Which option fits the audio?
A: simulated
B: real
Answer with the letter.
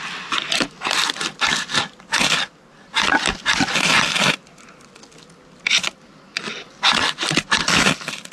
B